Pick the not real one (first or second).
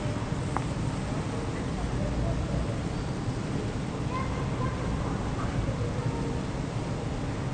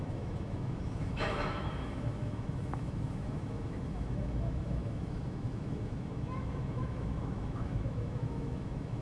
second